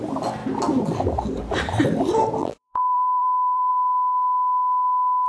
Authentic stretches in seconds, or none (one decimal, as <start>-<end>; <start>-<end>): 0.0-2.4; 3.7-5.3